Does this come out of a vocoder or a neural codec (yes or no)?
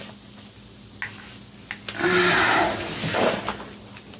no